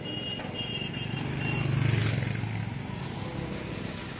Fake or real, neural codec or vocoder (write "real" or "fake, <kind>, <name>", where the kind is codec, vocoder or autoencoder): real